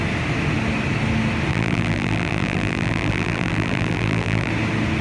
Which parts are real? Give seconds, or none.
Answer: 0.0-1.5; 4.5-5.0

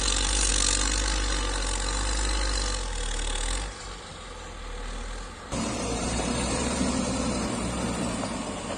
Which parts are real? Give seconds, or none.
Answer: 0.5-5.5

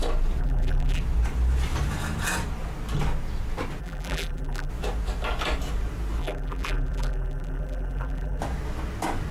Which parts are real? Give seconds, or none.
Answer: 0.0-0.4; 1.0-3.8; 4.7-6.2; 8.4-9.3

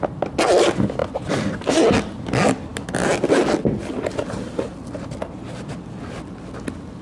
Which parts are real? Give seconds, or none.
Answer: 0.0-7.0

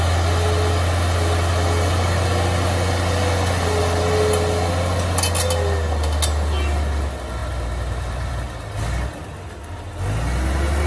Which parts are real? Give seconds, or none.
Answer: 0.0-7.4; 8.3-10.9